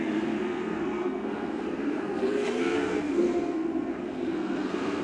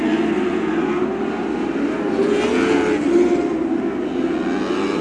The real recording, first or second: second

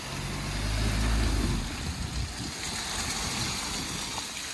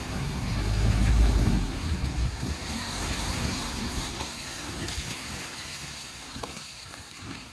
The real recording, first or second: first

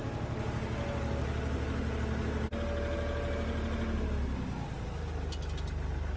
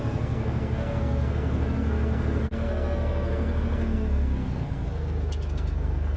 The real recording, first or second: first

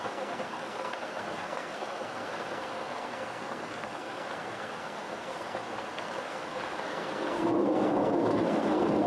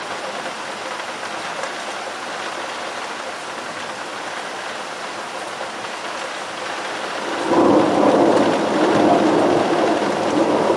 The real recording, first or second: second